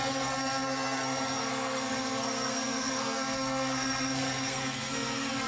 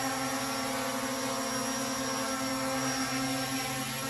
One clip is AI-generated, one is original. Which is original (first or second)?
second